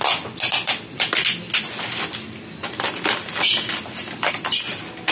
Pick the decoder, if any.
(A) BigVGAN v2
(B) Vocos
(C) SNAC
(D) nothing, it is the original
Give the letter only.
D